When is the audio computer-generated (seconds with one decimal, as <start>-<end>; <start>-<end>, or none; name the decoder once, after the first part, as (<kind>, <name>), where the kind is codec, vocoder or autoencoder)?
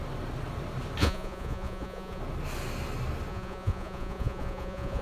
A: 1.0-2.2 (vocoder, Vocos); 3.3-5.0